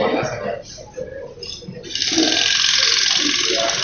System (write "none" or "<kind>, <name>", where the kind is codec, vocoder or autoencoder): none